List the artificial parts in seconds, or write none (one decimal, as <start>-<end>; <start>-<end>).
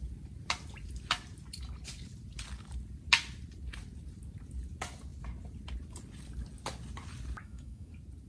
7.4-7.9